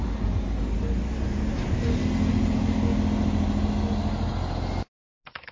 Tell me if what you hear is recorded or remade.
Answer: recorded